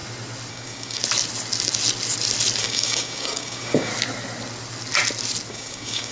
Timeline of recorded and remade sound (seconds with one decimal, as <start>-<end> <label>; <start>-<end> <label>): 0.0-0.5 recorded; 0.5-1.0 remade; 1.0-2.6 recorded; 2.6-3.9 remade; 3.9-5.5 recorded; 5.5-6.1 remade